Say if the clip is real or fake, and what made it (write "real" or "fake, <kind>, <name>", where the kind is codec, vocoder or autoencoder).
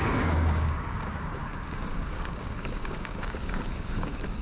fake, codec, DAC